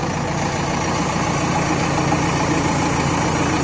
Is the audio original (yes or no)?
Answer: yes